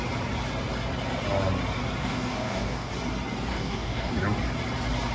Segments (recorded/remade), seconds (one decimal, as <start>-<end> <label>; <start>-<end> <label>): 0.0-2.0 recorded; 2.0-2.9 remade; 2.9-3.5 recorded; 3.5-4.1 remade; 4.1-5.1 recorded